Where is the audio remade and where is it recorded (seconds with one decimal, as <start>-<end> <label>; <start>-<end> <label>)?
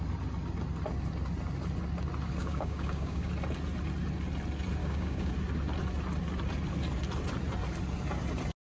0.0-2.4 recorded; 2.4-3.3 remade; 3.3-4.8 recorded; 4.8-5.3 remade; 5.3-8.8 recorded